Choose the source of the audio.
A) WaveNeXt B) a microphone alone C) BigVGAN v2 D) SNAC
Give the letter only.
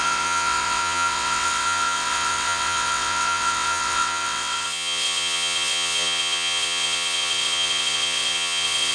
A